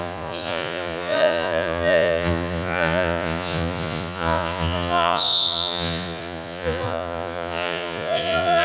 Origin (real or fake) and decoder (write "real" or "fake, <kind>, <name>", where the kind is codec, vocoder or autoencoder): fake, vocoder, Vocos